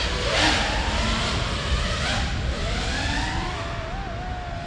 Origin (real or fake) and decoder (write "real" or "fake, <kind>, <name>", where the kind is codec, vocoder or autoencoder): real